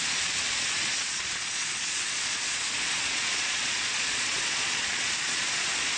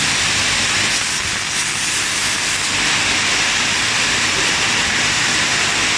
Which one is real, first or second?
second